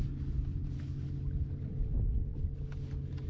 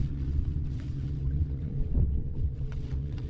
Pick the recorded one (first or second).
first